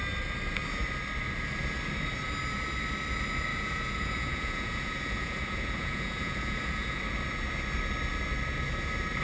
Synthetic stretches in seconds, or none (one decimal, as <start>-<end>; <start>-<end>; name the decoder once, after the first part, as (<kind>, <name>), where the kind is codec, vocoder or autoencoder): 3.5-7.0 (vocoder, Vocos)